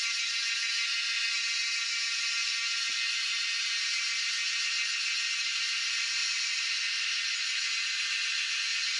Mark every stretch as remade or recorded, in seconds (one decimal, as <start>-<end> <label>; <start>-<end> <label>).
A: 0.0-9.0 recorded